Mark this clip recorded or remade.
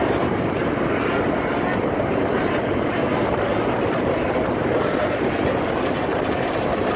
remade